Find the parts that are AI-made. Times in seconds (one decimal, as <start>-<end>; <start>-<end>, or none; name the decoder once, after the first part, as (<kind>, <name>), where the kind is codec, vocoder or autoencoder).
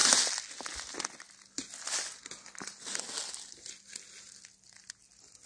none